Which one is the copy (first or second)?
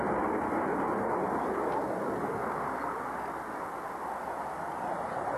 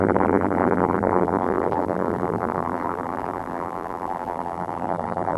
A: second